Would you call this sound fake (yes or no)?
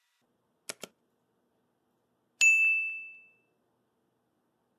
no